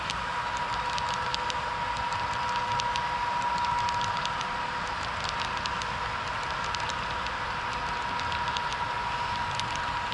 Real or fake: real